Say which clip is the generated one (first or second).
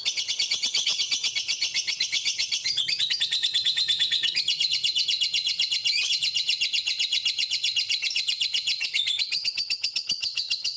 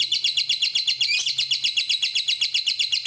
first